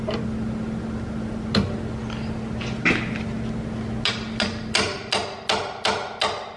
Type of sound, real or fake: real